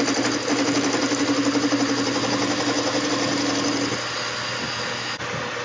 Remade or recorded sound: recorded